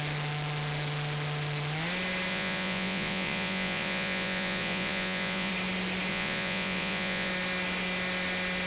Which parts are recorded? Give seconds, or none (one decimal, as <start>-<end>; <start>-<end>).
0.0-2.3; 5.5-6.1; 7.3-8.7